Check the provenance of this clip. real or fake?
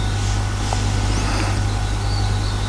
real